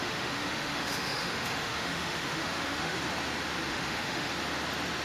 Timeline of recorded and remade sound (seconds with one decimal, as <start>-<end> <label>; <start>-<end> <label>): 0.0-3.0 remade; 3.0-3.7 recorded; 3.7-4.3 remade; 4.3-5.0 recorded